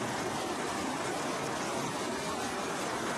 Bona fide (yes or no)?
yes